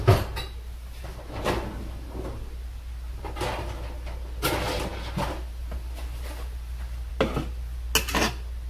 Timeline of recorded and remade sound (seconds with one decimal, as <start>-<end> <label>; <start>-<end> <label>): 0.0-8.7 recorded